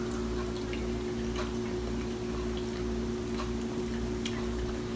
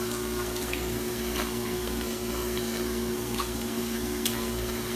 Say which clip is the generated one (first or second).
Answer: second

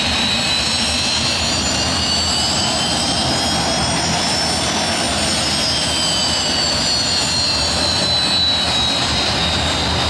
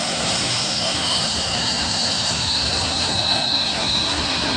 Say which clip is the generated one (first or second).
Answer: second